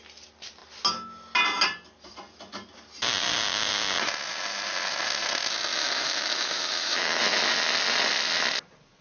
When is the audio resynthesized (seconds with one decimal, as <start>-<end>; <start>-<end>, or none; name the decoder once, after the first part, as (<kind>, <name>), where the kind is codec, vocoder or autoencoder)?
5.7-7.2 (autoencoder, DAC-VAE)